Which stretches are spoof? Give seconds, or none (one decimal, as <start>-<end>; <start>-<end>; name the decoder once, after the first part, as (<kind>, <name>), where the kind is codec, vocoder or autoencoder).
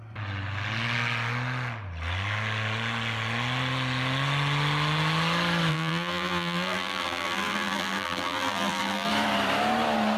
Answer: 5.7-9.1 (vocoder, BigVGAN v2)